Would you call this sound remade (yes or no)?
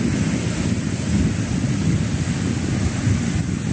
no